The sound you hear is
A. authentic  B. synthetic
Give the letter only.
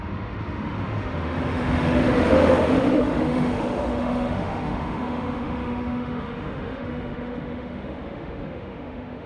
B